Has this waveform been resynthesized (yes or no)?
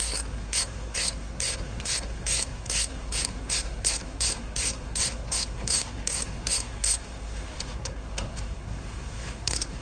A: yes